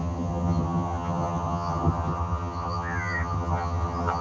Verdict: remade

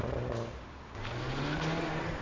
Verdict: recorded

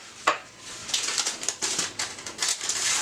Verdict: recorded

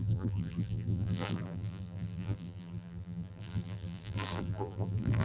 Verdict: remade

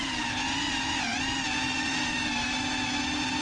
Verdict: recorded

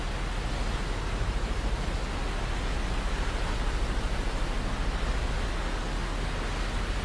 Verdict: recorded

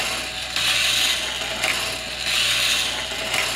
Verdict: recorded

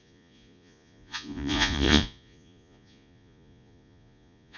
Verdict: remade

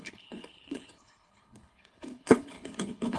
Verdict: remade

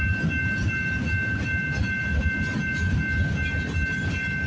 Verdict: recorded